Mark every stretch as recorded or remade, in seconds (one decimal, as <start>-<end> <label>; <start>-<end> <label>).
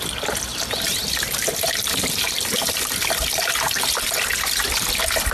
0.0-1.0 recorded; 1.0-4.2 remade; 4.2-5.3 recorded